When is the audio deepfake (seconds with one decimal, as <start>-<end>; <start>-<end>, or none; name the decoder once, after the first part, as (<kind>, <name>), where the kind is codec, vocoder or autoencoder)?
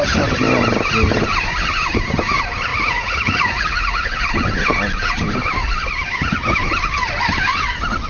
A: 2.7-4.3 (vocoder, Vocos)